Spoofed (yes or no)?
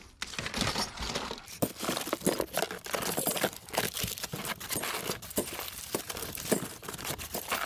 no